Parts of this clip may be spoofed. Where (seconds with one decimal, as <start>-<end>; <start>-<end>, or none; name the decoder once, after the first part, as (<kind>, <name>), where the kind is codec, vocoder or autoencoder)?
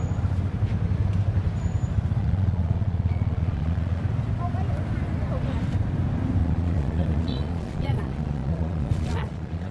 2.2-4.0 (vocoder, Vocos); 6.4-9.7